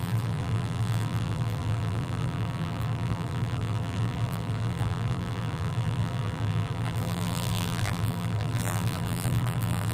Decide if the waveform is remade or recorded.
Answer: remade